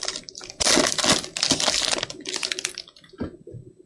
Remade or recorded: recorded